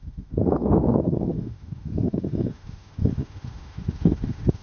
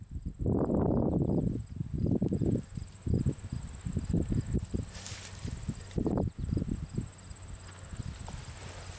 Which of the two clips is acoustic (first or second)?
second